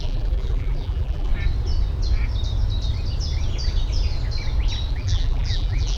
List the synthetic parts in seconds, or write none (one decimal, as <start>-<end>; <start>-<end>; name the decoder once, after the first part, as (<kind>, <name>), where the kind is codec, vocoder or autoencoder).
0.0-1.3 (vocoder, BigVGAN v2); 4.9-6.0